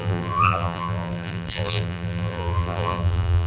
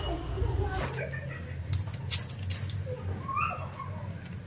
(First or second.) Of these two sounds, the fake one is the first